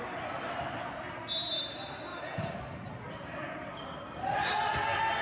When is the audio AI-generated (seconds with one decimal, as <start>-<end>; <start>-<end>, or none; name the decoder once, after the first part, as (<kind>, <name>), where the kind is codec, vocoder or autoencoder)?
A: 2.1-3.1 (vocoder, BigVGAN v2)